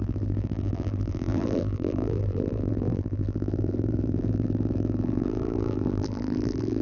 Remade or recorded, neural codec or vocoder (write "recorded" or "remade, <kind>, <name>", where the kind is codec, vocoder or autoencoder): remade, vocoder, BigVGAN v2